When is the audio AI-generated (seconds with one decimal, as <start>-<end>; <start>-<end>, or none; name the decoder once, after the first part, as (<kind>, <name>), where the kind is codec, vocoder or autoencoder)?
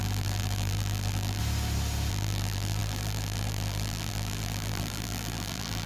0.0-1.4 (vocoder, BigVGAN v2); 2.1-5.9